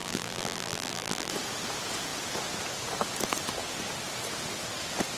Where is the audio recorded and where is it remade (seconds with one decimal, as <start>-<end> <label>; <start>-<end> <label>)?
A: 0.0-1.3 remade; 1.3-5.2 recorded